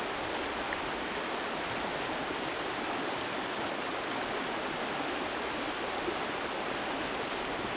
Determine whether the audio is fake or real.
real